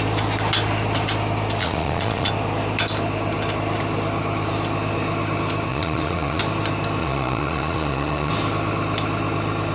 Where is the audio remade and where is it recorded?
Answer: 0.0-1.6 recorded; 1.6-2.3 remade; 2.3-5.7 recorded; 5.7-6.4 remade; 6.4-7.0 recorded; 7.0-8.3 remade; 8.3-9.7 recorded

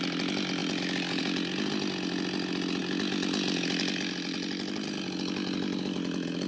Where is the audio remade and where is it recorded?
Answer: 0.0-0.6 recorded; 0.6-1.2 remade; 1.2-6.5 recorded

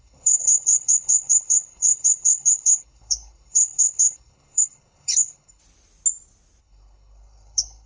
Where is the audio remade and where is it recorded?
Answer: 0.0-5.6 remade; 5.6-6.6 recorded; 6.6-7.9 remade

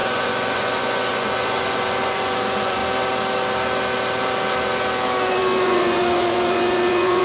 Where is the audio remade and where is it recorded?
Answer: 0.0-2.8 remade; 2.8-5.3 recorded; 5.3-7.2 remade

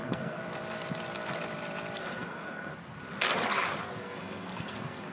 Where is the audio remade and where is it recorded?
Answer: 0.0-0.4 remade; 0.4-2.0 recorded; 2.0-2.7 remade; 2.7-4.0 recorded; 4.0-5.1 remade

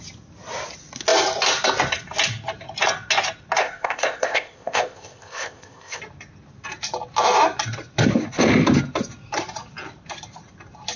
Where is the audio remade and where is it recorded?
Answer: 0.0-3.6 recorded; 3.6-6.0 remade; 6.0-11.0 recorded

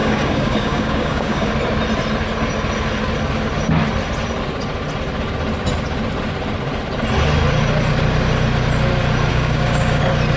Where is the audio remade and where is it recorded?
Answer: 0.0-1.5 remade; 1.5-9.3 recorded; 9.3-10.0 remade; 10.0-10.4 recorded

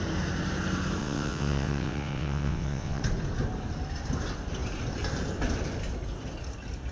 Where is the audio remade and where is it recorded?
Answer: 0.0-1.0 recorded; 1.0-3.0 remade; 3.0-6.9 recorded